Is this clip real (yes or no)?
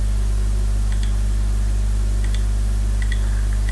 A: yes